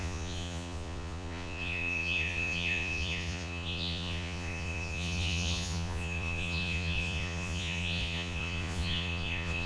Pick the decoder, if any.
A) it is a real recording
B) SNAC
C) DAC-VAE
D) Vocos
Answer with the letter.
D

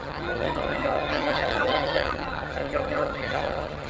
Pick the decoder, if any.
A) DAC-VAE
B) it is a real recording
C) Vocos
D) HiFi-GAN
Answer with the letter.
D